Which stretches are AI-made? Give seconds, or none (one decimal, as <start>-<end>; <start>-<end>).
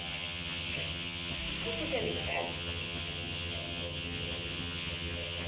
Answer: 0.0-1.4; 2.0-5.5